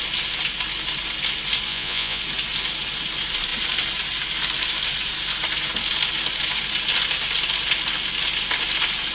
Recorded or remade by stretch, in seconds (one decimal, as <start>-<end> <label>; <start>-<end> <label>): 0.0-1.7 recorded; 1.7-2.2 remade; 2.2-9.1 recorded